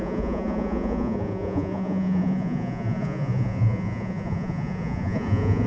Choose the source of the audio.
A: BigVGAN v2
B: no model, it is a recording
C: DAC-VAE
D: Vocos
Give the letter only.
D